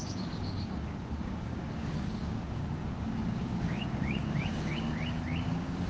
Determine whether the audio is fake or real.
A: fake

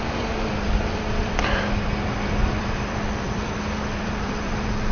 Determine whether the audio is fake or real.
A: fake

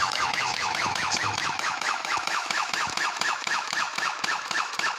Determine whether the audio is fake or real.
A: fake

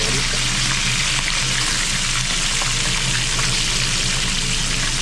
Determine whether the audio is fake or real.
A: real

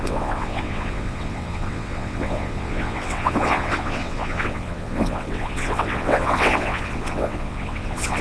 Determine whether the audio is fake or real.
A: fake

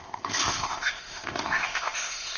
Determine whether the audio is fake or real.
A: fake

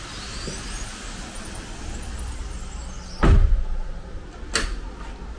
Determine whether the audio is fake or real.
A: real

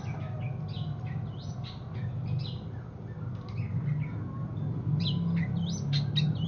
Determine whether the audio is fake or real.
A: real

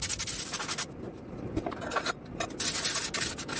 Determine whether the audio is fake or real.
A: real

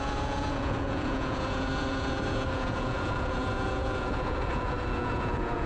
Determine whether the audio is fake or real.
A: fake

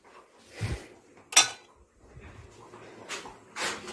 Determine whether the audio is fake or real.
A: real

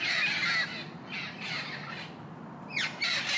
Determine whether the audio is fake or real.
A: real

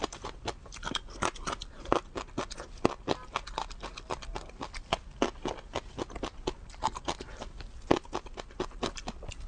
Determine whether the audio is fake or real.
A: real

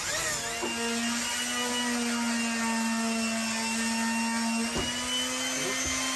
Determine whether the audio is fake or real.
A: real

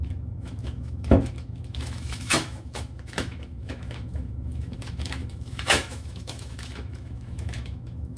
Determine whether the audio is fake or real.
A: fake